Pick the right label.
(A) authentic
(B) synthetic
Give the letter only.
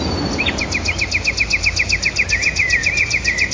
A